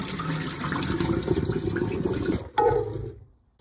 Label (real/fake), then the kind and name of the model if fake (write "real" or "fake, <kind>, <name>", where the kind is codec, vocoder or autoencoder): real